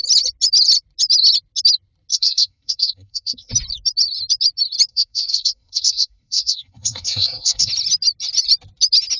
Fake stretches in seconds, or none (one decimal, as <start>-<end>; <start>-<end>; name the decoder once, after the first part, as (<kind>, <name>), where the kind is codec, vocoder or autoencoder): 2.1-3.5 (codec, SNAC); 4.9-7.7